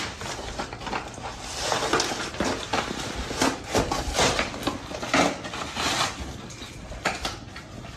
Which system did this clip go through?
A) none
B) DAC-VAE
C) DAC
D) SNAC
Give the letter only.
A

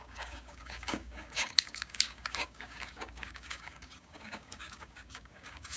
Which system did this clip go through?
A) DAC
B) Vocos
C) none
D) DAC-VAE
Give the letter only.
A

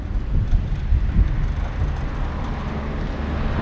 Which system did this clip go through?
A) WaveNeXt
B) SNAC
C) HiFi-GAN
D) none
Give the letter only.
D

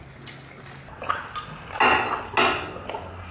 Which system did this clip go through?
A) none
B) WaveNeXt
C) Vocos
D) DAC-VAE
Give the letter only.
A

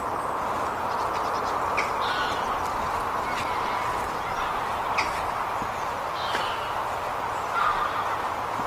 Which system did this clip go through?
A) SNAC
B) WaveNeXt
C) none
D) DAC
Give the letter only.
C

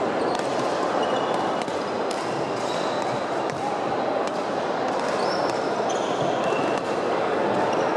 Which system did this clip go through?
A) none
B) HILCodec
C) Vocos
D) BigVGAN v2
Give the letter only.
A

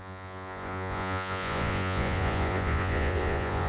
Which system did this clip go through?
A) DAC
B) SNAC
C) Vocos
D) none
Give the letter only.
C